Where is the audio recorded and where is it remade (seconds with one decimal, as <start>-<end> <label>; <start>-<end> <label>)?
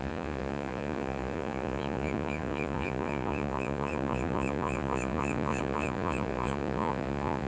0.0-7.5 remade